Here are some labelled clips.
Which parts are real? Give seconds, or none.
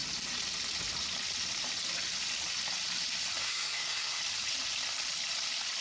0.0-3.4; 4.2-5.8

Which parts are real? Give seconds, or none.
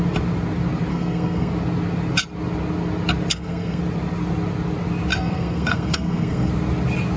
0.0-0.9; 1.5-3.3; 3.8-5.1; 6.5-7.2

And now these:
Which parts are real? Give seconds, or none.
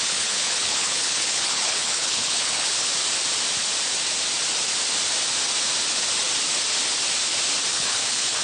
2.9-7.7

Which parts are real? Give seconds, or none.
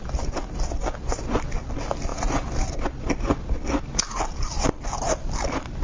0.4-1.1; 2.1-4.2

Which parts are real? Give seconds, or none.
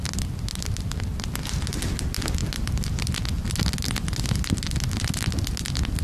0.0-6.0